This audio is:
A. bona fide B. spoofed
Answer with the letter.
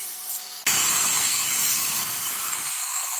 B